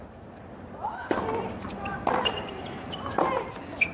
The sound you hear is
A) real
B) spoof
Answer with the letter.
A